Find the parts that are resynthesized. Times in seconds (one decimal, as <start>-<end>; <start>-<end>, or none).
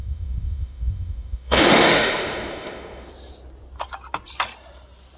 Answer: 0.0-3.1